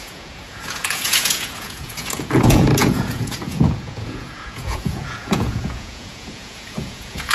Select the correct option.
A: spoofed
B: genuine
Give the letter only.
A